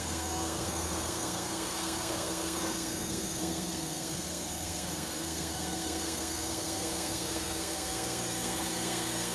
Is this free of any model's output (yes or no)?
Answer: no